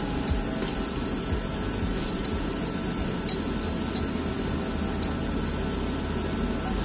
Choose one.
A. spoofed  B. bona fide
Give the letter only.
B